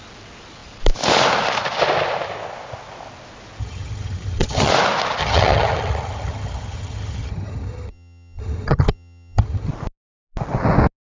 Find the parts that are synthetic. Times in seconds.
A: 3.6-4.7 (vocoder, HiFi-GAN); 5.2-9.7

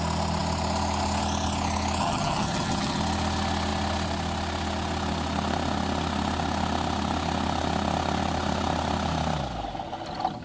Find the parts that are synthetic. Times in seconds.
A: 2.0-3.0 (vocoder, HiFi-GAN)

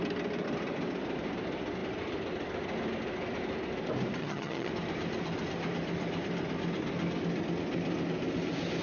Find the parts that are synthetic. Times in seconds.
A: 4.2-4.7 (vocoder, HiFi-GAN)

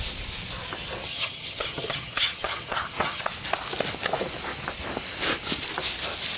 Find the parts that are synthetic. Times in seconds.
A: 1.1-3.2 (vocoder, HiFi-GAN)

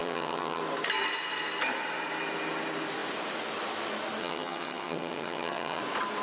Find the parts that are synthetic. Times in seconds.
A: 0.0-0.6 (vocoder, HiFi-GAN); 4.2-5.8

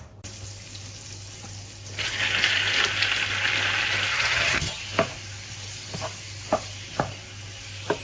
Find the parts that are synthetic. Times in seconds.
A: 4.1-4.8 (vocoder, HiFi-GAN)

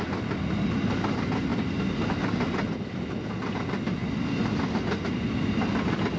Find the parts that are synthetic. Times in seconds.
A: none